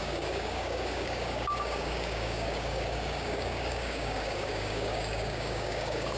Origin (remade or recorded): remade